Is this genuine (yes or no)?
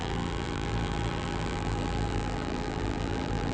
no